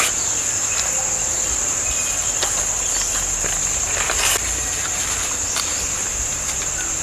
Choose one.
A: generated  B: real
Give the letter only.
B